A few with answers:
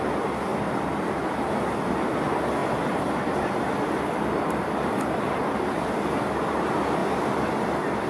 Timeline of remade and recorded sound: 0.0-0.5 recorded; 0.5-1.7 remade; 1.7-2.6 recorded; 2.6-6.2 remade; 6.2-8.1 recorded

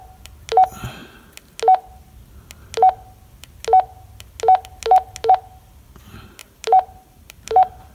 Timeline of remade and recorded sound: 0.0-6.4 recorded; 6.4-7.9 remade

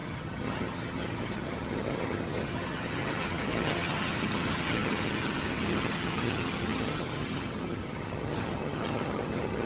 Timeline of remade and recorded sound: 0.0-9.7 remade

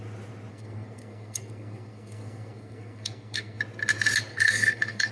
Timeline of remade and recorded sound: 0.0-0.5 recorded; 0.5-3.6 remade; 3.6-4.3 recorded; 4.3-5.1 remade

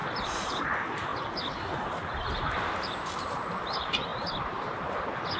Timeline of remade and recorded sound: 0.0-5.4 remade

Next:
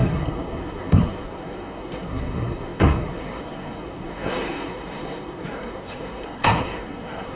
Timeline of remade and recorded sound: 0.0-7.4 remade

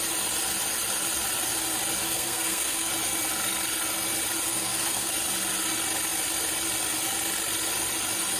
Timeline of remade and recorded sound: 0.0-2.0 recorded; 2.0-2.9 remade; 2.9-4.5 recorded; 4.5-5.1 remade; 5.1-8.4 recorded